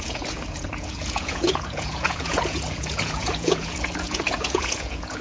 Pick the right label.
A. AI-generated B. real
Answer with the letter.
A